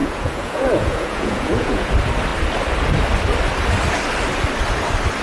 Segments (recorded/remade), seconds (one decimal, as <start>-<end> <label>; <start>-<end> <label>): 0.0-1.9 remade; 1.9-5.2 recorded